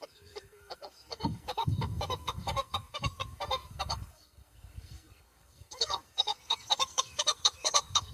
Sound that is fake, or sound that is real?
fake